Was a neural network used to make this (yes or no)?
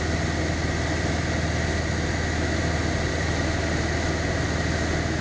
no